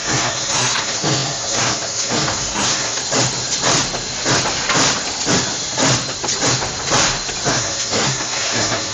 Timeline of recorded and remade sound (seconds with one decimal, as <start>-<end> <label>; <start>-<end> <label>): 0.0-3.0 remade; 3.0-7.5 recorded; 7.5-8.9 remade